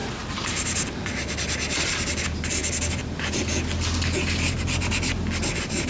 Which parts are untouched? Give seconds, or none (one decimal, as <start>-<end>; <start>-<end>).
0.0-1.8; 2.6-5.5